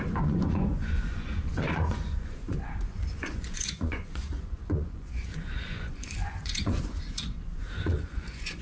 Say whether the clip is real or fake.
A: fake